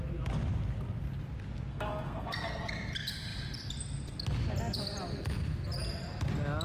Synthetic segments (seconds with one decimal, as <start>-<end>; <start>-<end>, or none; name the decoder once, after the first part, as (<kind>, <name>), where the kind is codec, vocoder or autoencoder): 1.7-2.6 (codec, SNAC)